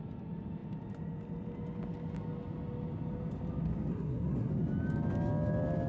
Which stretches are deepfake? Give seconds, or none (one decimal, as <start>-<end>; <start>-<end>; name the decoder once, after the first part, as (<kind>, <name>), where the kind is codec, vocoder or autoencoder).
3.9-4.5 (codec, SNAC)